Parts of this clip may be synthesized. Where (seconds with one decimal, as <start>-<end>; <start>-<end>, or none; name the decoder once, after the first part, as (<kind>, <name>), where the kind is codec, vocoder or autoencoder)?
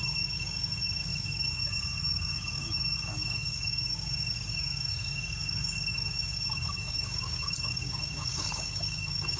0.0-9.4 (codec, DAC)